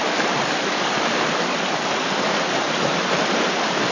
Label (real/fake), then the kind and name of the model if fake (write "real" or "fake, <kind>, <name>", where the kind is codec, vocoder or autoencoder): real